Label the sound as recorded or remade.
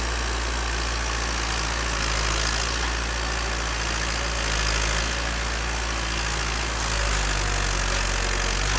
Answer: recorded